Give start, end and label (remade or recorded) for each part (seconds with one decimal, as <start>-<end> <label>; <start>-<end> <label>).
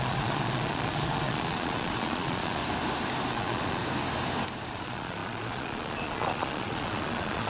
0.0-2.6 remade; 2.6-3.3 recorded; 3.3-3.8 remade; 3.8-4.7 recorded; 4.7-7.5 remade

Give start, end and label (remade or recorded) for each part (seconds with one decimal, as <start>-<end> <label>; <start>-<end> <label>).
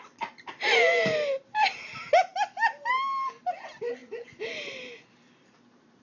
0.0-6.0 recorded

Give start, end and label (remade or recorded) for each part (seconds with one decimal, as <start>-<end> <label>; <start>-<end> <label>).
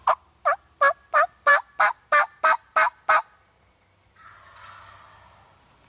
0.0-5.9 recorded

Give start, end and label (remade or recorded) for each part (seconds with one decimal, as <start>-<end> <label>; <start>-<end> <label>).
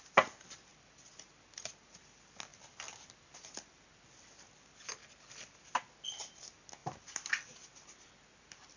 0.0-8.8 recorded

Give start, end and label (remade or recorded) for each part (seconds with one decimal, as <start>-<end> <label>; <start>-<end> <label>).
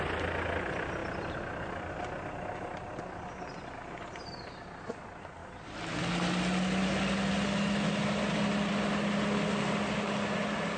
0.0-10.8 recorded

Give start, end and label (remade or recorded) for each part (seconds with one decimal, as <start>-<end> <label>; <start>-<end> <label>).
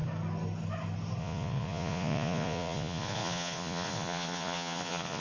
0.0-1.2 recorded; 1.2-5.2 remade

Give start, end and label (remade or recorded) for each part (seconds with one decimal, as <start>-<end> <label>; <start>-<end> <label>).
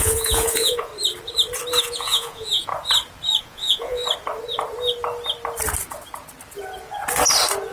0.0-0.9 remade; 0.9-1.8 recorded; 1.8-2.7 remade; 2.7-3.4 recorded; 3.4-4.0 remade; 4.0-7.7 recorded